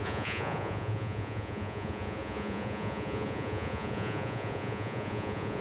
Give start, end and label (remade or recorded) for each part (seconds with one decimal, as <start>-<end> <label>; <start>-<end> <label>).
0.0-5.6 remade